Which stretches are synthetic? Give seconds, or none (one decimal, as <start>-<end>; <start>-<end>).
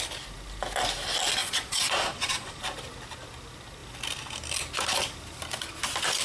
1.4-2.6